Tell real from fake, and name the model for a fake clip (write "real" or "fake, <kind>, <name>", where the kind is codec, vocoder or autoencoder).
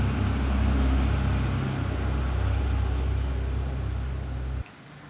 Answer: real